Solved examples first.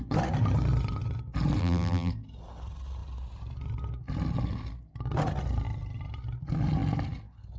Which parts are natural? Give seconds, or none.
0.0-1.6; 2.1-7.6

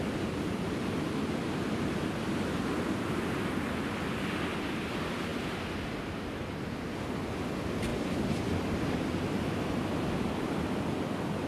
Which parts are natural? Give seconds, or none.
0.0-11.5

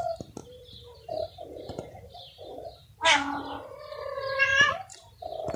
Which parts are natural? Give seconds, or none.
0.0-0.4; 2.5-4.5; 5.1-5.6